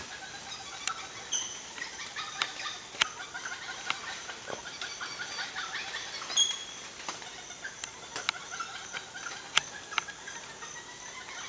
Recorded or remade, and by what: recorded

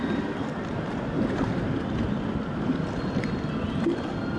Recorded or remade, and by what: recorded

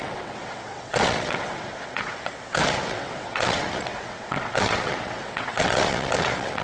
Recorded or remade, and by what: remade, vocoder, WaveNeXt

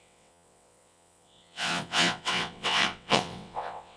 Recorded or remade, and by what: remade, vocoder, WaveNeXt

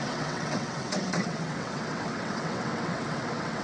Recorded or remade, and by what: remade, vocoder, WaveNeXt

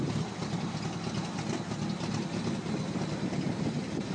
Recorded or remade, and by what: recorded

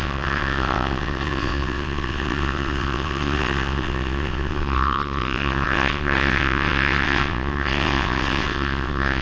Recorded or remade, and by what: remade, vocoder, WaveNeXt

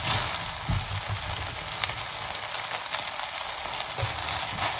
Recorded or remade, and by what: recorded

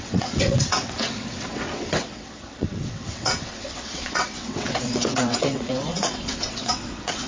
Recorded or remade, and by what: remade, vocoder, WaveNeXt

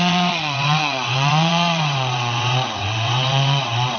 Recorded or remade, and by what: remade, vocoder, WaveNeXt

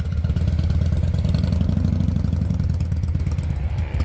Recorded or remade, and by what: recorded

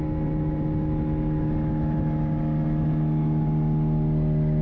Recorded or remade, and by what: recorded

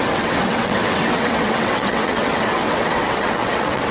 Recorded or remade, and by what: remade, vocoder, WaveNeXt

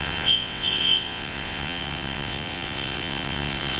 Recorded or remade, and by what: remade, vocoder, WaveNeXt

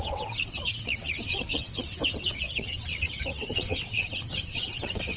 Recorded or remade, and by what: remade, vocoder, WaveNeXt